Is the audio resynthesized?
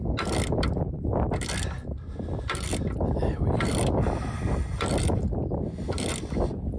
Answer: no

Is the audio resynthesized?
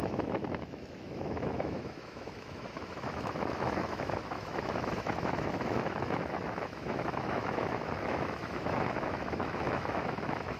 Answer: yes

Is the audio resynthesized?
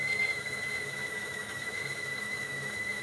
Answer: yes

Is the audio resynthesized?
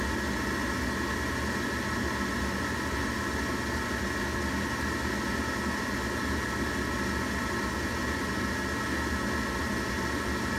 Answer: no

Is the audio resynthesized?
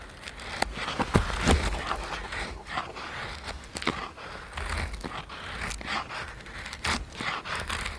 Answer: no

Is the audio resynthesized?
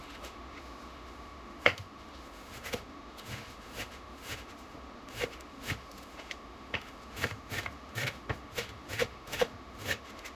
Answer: yes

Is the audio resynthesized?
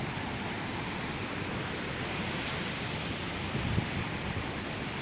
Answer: no